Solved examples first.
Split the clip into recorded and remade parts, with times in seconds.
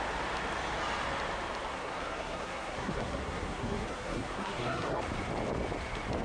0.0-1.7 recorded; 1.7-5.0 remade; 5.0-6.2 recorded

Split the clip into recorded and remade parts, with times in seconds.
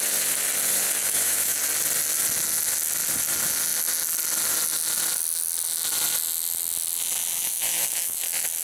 0.0-1.0 recorded; 1.0-1.6 remade; 1.6-7.4 recorded; 7.4-8.2 remade; 8.2-8.6 recorded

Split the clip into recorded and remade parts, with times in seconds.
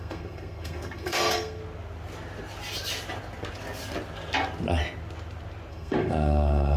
0.0-1.6 remade; 1.6-5.7 recorded; 5.7-6.8 remade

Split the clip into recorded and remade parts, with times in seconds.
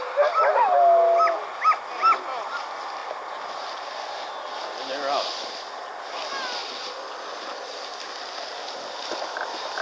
0.0-9.8 recorded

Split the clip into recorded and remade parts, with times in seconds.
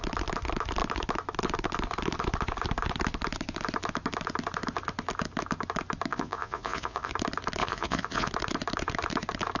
0.0-6.1 recorded; 6.1-7.1 remade; 7.1-7.6 recorded; 7.6-8.3 remade; 8.3-9.6 recorded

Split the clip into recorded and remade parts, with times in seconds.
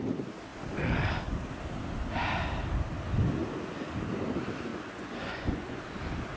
0.0-4.7 recorded; 4.7-5.8 remade; 5.8-6.4 recorded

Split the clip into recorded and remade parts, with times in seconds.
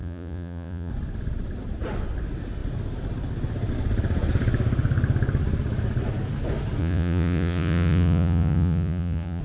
0.0-0.9 remade; 0.9-6.8 recorded; 6.8-9.4 remade